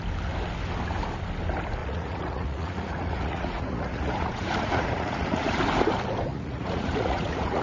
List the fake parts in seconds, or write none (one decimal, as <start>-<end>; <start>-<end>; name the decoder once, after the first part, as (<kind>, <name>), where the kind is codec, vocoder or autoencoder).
1.8-5.6 (vocoder, Vocos); 6.3-7.6